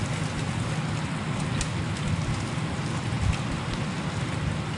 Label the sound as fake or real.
real